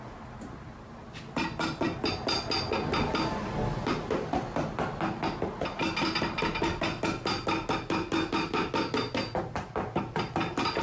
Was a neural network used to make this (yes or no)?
no